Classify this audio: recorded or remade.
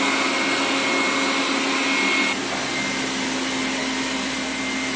recorded